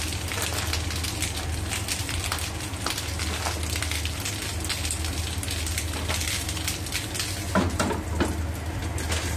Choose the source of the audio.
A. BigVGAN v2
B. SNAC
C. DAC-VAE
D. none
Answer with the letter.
D